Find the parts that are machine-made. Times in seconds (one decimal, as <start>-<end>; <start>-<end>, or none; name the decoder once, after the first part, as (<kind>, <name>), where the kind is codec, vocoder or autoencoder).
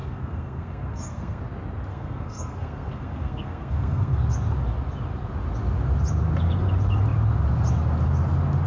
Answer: 0.0-1.4 (codec, SNAC); 1.9-4.2